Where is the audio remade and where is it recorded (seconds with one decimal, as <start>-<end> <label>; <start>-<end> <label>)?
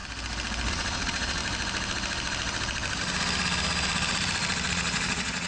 0.0-0.7 recorded; 0.7-1.4 remade; 1.4-4.7 recorded; 4.7-5.5 remade